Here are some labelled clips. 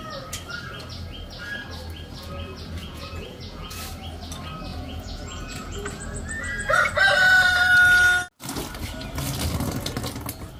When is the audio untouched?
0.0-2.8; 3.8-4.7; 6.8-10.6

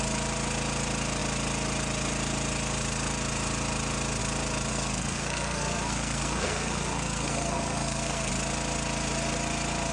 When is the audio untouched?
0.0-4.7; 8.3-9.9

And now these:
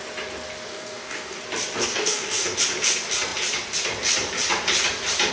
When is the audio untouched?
0.0-0.7; 1.4-1.8; 2.6-5.3

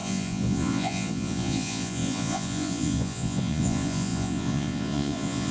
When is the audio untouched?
none

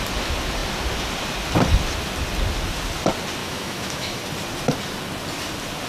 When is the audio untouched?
0.0-3.4; 4.2-5.9

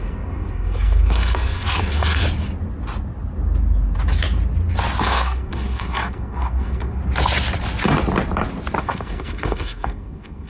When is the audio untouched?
2.2-5.0; 7.0-8.8